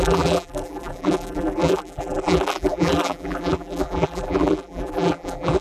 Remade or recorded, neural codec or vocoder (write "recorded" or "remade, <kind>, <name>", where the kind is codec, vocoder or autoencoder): remade, vocoder, BigVGAN v2